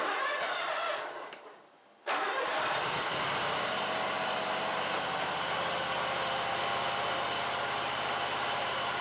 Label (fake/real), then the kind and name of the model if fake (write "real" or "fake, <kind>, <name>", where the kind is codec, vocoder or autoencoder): fake, vocoder, BigVGAN v2